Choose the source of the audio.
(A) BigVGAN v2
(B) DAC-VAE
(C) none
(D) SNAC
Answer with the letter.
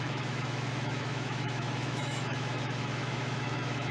B